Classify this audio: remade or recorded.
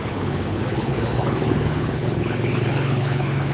remade